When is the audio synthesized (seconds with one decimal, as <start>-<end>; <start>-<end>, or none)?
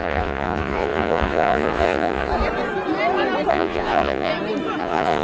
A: 0.0-2.3; 3.5-4.3; 4.8-5.2